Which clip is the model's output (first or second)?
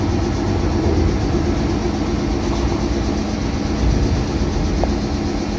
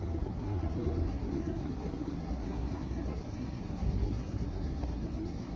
second